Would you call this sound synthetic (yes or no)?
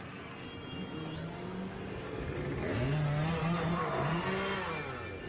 no